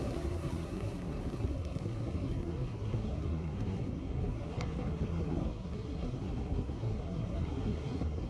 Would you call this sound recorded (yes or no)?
no